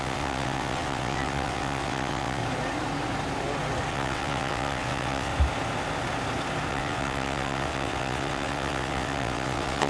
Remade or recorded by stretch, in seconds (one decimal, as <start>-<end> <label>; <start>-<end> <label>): 0.0-2.4 remade; 2.4-3.9 recorded; 3.9-5.3 remade; 5.3-6.7 recorded; 6.7-9.9 remade